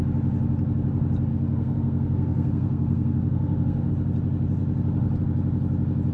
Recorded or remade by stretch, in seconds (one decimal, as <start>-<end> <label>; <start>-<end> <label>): 0.0-1.3 recorded; 1.3-3.9 remade; 3.9-6.1 recorded